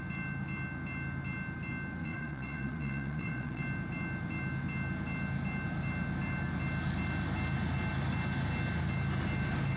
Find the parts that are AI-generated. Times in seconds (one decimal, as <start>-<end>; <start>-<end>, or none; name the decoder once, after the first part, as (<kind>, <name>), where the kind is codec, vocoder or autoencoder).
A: 2.0-3.6 (vocoder, Vocos)